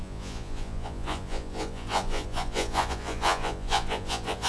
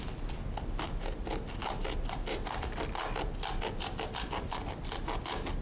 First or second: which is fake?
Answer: first